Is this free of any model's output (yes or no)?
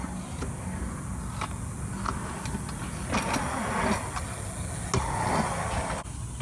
yes